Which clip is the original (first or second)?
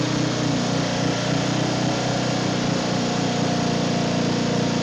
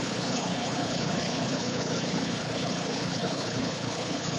first